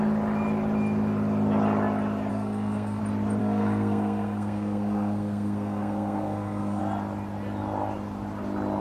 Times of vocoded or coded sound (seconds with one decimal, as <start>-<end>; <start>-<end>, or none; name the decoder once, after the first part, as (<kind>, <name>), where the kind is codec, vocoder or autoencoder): 2.3-3.0 (codec, SNAC); 3.4-6.8